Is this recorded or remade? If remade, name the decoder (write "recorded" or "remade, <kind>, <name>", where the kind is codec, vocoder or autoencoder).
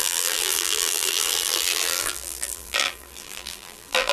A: remade, vocoder, BigVGAN v2